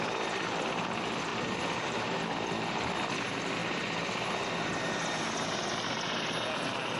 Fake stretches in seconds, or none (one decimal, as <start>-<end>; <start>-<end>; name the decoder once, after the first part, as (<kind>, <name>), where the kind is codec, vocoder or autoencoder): 1.3-2.2 (vocoder, BigVGAN v2)